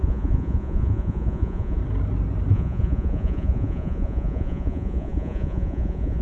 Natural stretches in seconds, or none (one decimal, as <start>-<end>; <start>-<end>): 1.8-2.5